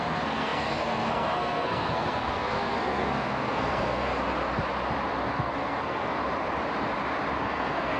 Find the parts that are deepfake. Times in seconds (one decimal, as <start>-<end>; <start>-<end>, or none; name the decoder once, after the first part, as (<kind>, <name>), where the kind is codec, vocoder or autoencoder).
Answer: 0.0-4.1 (codec, SNAC); 5.3-6.2; 7.4-8.0